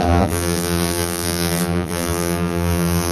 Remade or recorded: remade